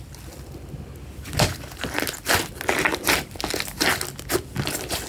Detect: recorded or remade recorded